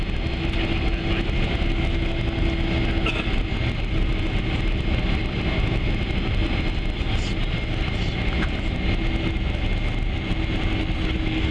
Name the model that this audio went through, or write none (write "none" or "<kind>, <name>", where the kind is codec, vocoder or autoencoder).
none